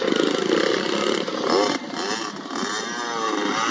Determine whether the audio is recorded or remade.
recorded